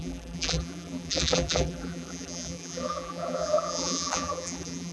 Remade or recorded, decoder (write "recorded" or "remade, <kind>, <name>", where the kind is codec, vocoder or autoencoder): remade, vocoder, BigVGAN v2